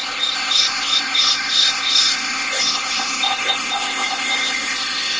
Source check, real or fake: fake